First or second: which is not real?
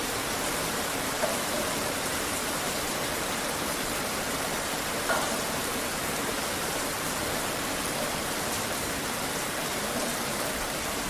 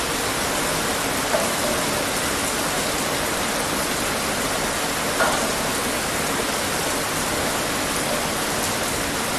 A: first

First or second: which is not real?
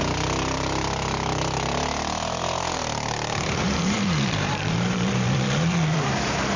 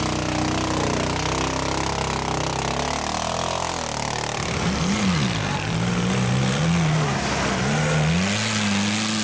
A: first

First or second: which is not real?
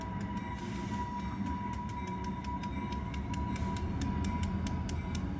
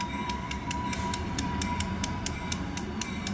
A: second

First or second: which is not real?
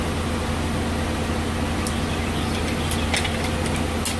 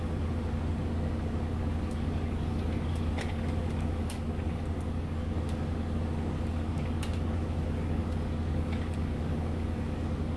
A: second